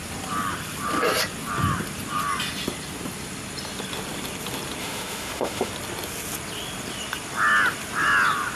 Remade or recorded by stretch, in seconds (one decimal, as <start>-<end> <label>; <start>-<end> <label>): 0.0-4.8 recorded; 4.8-5.7 remade; 5.7-8.6 recorded

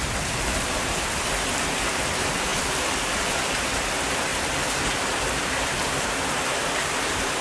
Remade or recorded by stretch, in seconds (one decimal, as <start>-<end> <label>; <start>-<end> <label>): 0.0-7.4 recorded